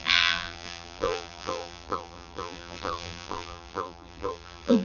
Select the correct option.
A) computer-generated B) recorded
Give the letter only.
A